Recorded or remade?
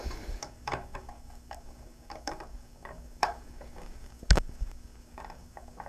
remade